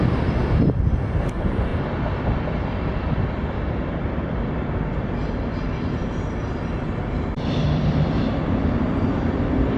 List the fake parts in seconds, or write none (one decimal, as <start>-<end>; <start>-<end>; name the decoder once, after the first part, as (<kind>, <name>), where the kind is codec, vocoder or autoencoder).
0.0-9.8 (vocoder, BigVGAN v2)